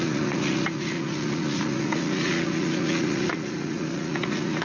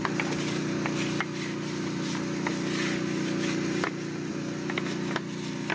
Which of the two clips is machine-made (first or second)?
first